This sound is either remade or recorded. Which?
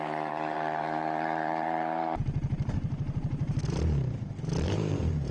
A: remade